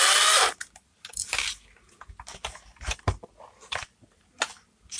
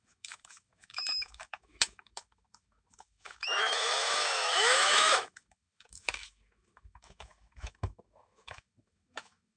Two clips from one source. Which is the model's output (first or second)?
second